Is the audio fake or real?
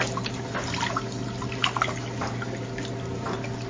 real